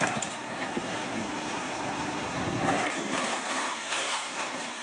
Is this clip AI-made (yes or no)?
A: yes